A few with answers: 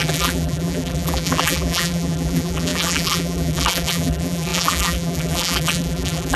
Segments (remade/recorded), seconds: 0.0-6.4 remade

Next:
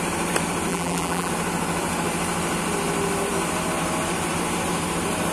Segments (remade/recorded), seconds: 0.0-0.7 recorded; 0.7-1.3 remade; 1.3-5.3 recorded

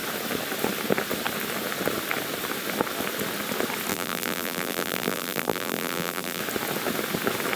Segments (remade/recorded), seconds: 0.0-3.9 recorded; 3.9-6.4 remade; 6.4-7.6 recorded

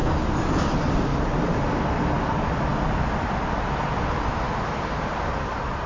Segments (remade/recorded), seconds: 0.0-1.1 recorded; 1.1-1.8 remade; 1.8-4.3 recorded; 4.3-5.9 remade